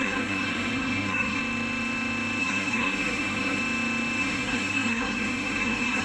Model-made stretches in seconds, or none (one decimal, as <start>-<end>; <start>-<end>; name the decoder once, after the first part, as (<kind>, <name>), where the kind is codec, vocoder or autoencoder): 0.0-1.4 (codec, SNAC); 2.4-3.6; 4.2-6.0